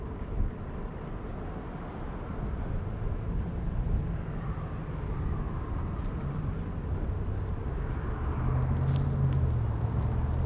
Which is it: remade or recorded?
recorded